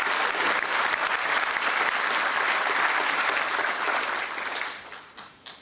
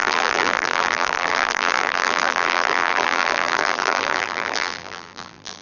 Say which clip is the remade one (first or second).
second